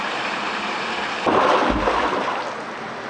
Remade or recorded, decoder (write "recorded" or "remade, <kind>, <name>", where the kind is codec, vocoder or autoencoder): recorded